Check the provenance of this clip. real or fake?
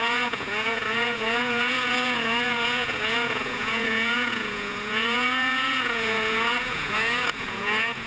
fake